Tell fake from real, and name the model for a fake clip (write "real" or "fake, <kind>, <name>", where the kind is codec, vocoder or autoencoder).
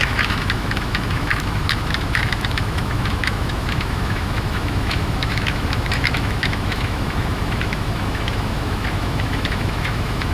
fake, autoencoder, DAC-VAE